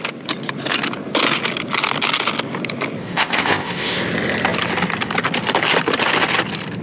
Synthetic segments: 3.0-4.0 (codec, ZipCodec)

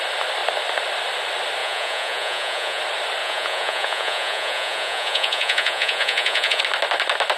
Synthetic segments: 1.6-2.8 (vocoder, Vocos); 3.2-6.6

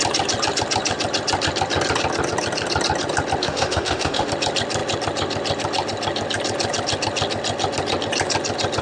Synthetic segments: 3.4-4.3 (autoencoder, DAC-VAE)

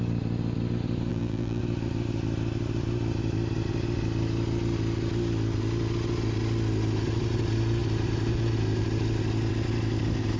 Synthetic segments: 1.1-1.6 (vocoder, BigVGAN v2)

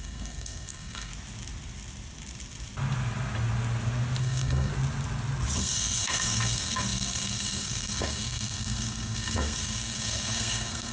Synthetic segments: 0.0-1.1 (codec, SNAC); 4.2-4.7; 5.6-10.9

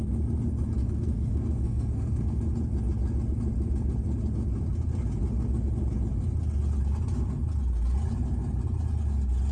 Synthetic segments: 0.8-2.4 (codec, SNAC)